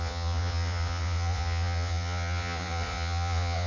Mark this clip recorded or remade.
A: remade